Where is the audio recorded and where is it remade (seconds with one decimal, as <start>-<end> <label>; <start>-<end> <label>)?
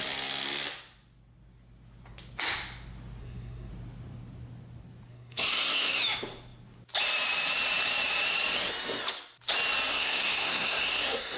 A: 0.0-3.2 recorded; 3.2-3.7 remade; 3.7-5.1 recorded; 5.1-6.0 remade; 6.0-9.9 recorded; 9.9-11.4 remade